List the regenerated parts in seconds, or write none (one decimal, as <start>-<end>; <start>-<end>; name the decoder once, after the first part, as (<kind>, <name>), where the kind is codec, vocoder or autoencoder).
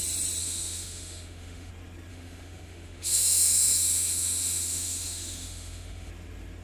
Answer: 0.4-1.7 (autoencoder, DAC-VAE); 2.1-6.1